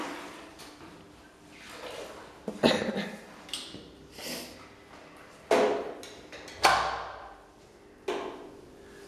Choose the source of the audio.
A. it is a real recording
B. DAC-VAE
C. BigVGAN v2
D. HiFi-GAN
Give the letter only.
A